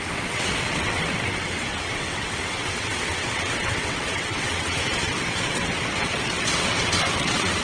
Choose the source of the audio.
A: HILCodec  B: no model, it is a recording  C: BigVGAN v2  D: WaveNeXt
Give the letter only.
D